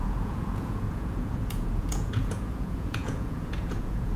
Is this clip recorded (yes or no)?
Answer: no